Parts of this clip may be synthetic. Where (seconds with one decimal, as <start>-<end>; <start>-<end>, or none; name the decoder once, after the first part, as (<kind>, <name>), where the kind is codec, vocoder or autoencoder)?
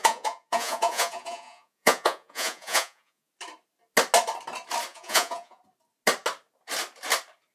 0.0-3.3 (vocoder, Vocos); 4.9-5.6